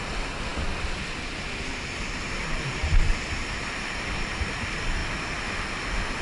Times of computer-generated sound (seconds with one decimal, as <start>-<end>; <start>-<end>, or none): none